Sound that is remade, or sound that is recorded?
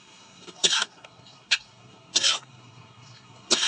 remade